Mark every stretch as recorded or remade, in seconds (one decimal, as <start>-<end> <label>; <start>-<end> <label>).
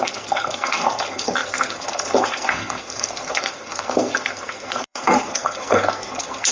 0.0-6.5 remade